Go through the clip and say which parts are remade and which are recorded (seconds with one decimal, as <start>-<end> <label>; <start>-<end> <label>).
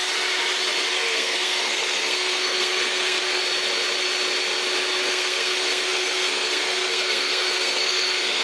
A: 0.0-0.9 recorded; 0.9-3.4 remade; 3.4-5.1 recorded; 5.1-8.4 remade